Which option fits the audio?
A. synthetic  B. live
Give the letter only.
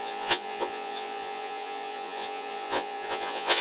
A